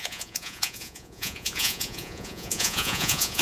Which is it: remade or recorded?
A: remade